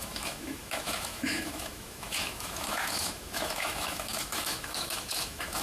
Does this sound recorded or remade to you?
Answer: remade